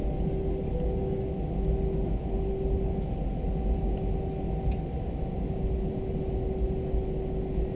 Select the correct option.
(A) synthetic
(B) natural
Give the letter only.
B